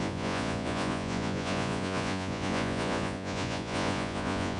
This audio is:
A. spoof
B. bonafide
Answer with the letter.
A